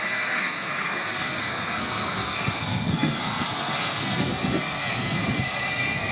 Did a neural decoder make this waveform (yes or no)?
yes